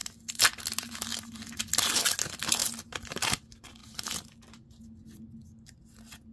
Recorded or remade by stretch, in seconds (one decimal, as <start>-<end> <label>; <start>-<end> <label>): 0.0-6.3 recorded